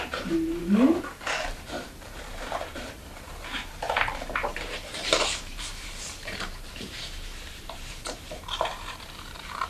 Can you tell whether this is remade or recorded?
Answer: remade